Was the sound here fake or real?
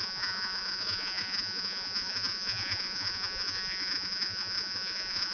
fake